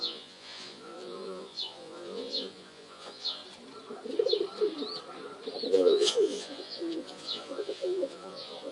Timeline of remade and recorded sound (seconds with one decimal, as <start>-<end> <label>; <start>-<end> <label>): 0.0-3.4 remade; 3.4-5.7 recorded; 5.7-8.7 remade